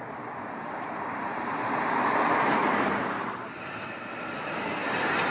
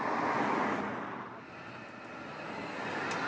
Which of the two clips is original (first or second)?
second